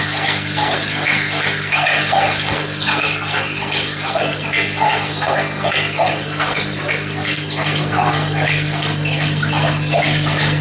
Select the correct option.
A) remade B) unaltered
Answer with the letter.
A